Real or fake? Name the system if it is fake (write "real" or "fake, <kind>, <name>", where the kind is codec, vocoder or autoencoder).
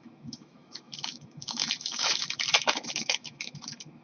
fake, autoencoder, DAC-VAE